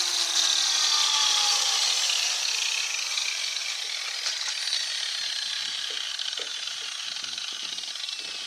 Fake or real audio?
real